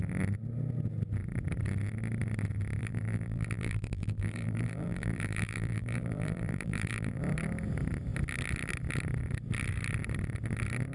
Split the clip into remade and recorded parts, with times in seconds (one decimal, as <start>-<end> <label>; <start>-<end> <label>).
0.0-2.8 recorded; 2.8-7.2 remade; 7.2-10.9 recorded